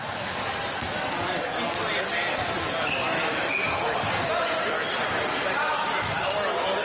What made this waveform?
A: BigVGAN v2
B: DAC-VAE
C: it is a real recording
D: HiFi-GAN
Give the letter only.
C